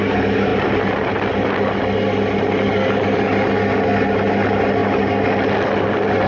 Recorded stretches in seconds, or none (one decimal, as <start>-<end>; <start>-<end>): 0.0-6.3